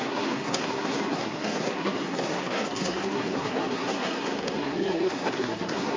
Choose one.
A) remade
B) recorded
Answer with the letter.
A